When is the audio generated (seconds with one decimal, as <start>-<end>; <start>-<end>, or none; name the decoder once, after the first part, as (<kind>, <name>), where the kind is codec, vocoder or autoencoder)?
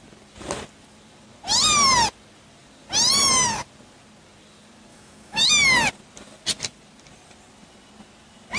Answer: 4.9-5.5 (autoencoder, DAC-VAE)